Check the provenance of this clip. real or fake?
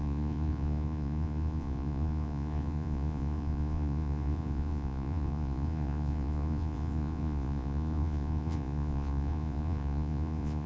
fake